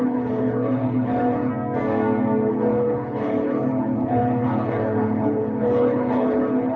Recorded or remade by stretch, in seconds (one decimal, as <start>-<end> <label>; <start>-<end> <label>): 0.0-1.5 remade; 1.5-2.5 recorded; 2.5-6.8 remade